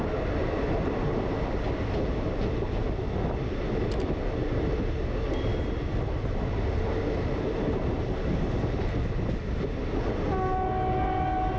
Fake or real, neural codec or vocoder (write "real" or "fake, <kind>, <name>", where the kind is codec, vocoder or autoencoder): real